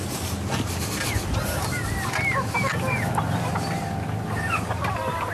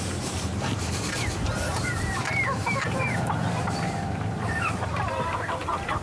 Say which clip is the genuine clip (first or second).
first